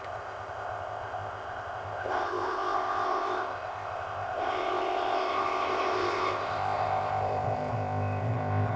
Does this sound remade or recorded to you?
remade